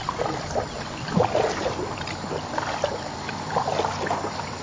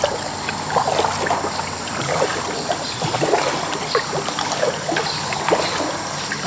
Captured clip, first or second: second